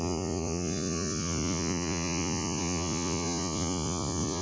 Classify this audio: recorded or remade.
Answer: remade